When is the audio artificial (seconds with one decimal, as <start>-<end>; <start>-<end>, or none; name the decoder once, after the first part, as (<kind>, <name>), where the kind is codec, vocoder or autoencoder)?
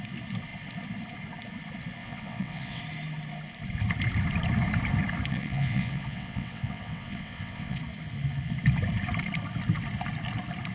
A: 2.0-2.8 (vocoder, WaveNeXt); 5.3-7.8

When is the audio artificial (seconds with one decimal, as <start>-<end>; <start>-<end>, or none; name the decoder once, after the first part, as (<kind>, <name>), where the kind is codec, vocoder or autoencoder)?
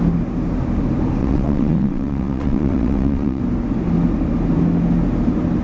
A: 1.2-3.4 (vocoder, WaveNeXt)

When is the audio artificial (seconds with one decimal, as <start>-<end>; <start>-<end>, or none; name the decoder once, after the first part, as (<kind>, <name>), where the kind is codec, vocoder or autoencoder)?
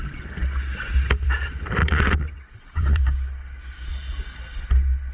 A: 1.8-3.0 (vocoder, WaveNeXt)